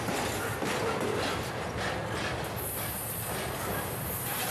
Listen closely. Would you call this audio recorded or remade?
recorded